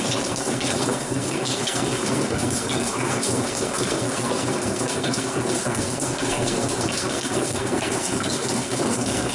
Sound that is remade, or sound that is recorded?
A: remade